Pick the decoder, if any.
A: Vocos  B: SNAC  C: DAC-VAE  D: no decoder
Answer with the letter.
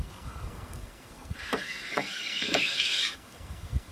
B